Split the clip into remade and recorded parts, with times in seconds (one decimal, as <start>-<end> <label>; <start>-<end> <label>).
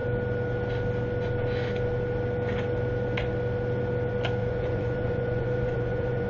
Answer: 0.0-4.4 recorded; 4.4-6.3 remade